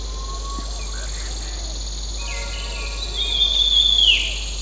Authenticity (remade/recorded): recorded